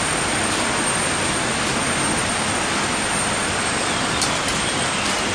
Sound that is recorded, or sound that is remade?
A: recorded